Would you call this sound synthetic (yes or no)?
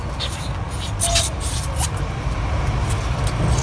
no